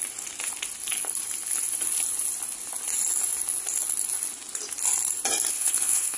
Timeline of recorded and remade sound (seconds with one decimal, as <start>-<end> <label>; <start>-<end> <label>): 0.0-5.5 recorded; 5.5-6.2 remade